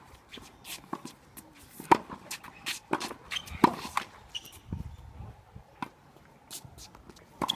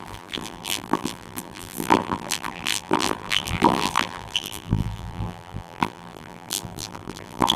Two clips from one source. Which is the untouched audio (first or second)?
first